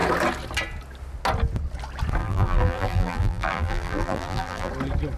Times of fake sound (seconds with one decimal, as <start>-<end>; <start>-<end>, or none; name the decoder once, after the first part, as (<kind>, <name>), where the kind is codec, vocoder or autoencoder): 2.2-4.7 (vocoder, BigVGAN v2)

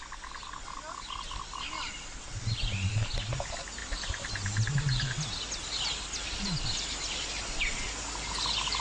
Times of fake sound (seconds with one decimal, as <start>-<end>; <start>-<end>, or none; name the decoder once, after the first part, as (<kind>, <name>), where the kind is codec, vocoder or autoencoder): none

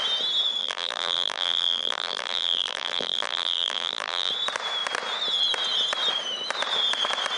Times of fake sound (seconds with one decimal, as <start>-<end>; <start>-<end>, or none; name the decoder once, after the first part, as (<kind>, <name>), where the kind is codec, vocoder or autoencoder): 0.6-4.3 (vocoder, BigVGAN v2)